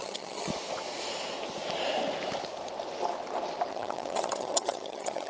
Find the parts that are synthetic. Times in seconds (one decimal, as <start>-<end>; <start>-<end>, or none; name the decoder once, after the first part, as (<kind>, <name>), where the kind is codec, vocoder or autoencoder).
0.0-0.5 (vocoder, HiFi-GAN); 3.7-5.3